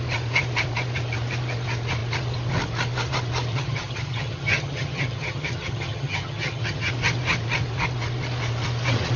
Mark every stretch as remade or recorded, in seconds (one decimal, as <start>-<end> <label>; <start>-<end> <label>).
0.0-3.5 recorded; 3.5-6.9 remade; 6.9-9.2 recorded